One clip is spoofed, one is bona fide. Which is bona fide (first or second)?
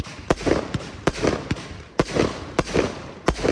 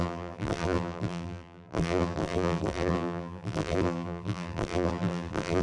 first